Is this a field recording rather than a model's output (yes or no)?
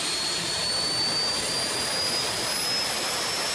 yes